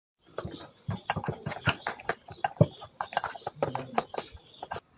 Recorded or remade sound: recorded